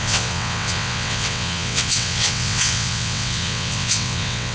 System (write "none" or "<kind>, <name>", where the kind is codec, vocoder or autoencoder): vocoder, WaveNeXt